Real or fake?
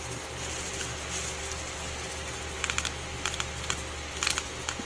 real